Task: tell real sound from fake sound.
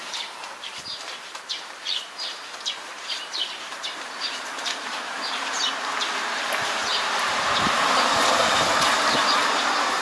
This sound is fake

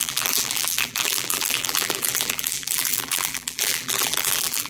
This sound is fake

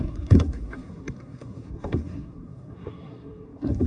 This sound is fake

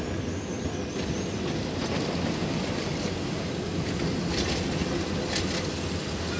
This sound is real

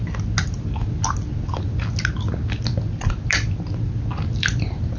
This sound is real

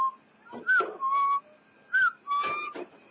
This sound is real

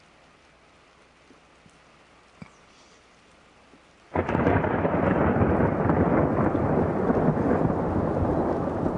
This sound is real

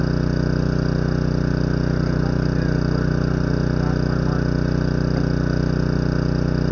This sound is real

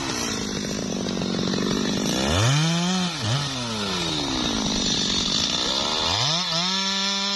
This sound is real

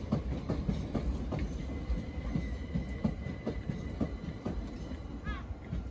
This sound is real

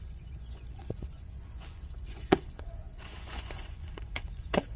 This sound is fake